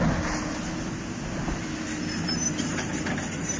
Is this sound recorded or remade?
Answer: recorded